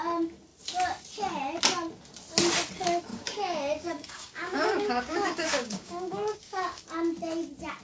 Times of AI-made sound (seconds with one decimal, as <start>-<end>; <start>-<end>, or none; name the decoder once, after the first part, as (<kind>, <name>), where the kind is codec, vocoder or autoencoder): 3.1-6.8 (codec, DAC)